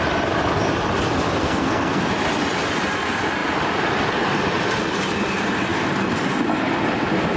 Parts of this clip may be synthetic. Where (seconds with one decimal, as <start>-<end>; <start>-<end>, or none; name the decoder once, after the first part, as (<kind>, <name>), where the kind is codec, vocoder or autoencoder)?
1.4-2.1 (codec, SNAC)